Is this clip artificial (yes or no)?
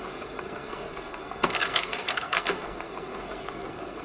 yes